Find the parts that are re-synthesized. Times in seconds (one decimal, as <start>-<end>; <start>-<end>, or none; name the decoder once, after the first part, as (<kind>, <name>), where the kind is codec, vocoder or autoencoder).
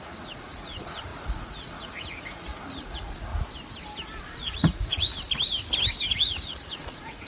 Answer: 0.0-3.3 (vocoder, Vocos); 4.2-5.1; 6.1-7.3